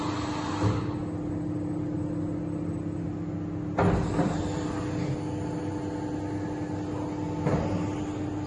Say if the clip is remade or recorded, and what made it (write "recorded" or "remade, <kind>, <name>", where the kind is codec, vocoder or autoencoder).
recorded